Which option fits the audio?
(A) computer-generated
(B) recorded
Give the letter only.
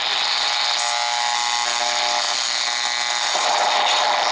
B